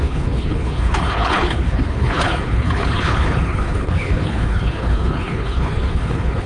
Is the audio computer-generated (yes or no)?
yes